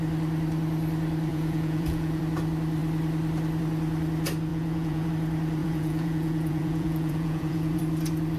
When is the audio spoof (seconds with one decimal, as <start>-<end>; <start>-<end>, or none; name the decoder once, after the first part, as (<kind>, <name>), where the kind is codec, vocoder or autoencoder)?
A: 1.3-2.2 (vocoder, Vocos); 4.5-5.1; 5.6-7.8